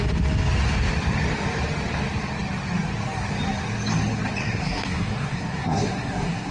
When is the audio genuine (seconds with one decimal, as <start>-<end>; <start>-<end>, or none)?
0.0-4.4